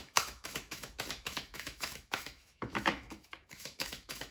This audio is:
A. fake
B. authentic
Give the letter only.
A